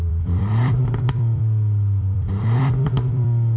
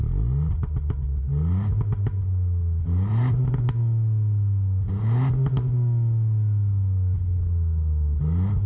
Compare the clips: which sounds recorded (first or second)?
second